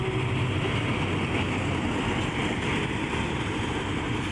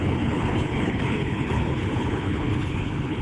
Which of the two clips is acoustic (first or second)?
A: first